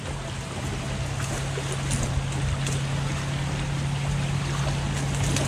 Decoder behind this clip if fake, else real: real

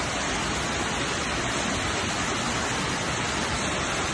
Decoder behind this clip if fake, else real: real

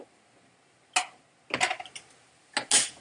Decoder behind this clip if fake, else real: real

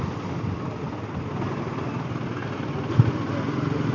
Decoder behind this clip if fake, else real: real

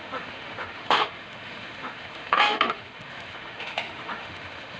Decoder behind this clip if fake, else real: fake, autoencoder, DAC-VAE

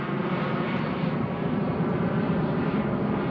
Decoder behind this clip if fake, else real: real